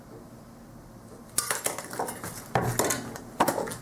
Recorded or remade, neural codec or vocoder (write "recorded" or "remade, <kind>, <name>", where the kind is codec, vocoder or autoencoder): recorded